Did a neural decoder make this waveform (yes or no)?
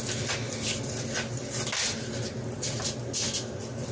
no